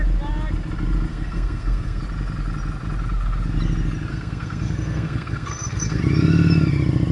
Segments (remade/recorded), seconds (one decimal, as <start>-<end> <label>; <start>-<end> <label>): 0.0-1.1 recorded; 1.1-2.0 remade; 2.0-4.1 recorded; 4.1-6.0 remade; 6.0-7.1 recorded